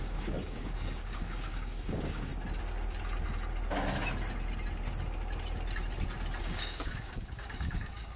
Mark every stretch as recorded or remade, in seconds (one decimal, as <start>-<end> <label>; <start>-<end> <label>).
0.0-2.3 remade; 2.3-6.4 recorded; 6.4-8.2 remade